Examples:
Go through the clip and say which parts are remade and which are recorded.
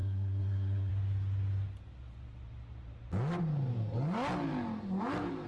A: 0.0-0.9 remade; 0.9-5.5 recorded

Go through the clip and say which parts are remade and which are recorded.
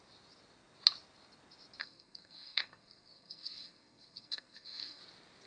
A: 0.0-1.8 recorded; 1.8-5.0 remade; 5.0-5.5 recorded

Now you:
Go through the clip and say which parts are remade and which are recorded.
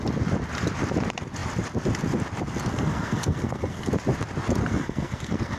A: 0.0-2.7 recorded; 2.7-3.9 remade; 3.9-4.6 recorded; 4.6-5.6 remade